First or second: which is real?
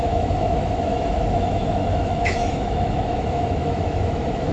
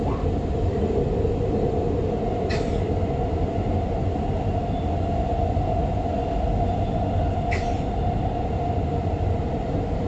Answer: second